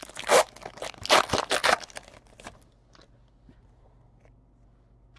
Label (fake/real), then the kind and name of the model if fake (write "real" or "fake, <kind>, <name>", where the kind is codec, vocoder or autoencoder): real